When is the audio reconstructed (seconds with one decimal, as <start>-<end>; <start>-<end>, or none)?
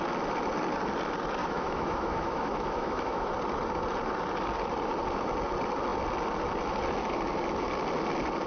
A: 1.4-3.3